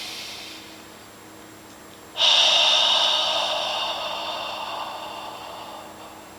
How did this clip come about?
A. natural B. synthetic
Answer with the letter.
A